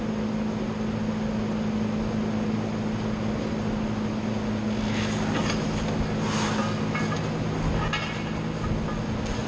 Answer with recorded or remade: recorded